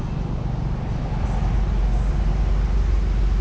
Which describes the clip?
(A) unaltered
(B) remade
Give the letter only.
A